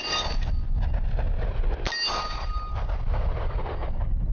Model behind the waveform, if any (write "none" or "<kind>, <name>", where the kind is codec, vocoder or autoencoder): none